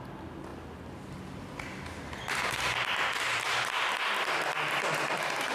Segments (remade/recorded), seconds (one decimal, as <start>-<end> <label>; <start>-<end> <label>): 0.0-5.5 remade